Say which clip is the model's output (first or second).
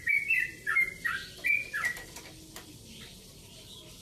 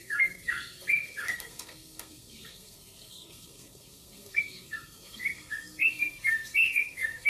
second